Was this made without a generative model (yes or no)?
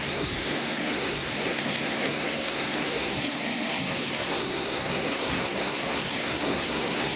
no